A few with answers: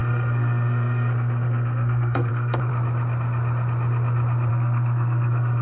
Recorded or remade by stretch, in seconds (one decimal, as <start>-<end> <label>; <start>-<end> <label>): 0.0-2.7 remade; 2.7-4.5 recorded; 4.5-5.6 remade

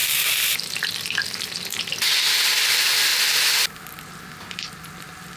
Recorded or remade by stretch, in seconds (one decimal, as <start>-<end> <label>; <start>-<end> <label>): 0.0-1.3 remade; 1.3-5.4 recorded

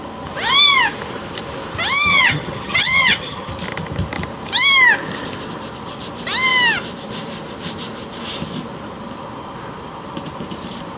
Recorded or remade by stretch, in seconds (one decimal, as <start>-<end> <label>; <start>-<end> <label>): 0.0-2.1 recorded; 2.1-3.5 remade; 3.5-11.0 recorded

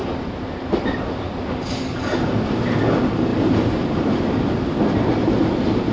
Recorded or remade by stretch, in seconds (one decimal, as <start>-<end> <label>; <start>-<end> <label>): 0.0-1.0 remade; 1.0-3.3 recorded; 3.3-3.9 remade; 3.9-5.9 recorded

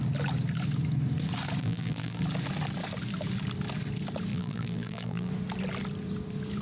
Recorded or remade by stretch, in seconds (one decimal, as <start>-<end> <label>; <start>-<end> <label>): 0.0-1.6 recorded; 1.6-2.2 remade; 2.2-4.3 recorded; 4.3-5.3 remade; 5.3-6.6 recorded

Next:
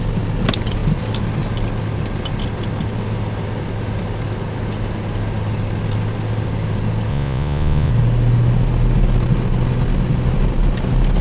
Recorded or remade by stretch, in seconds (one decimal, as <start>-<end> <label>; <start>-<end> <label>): 0.0-7.1 recorded; 7.1-7.9 remade; 7.9-11.2 recorded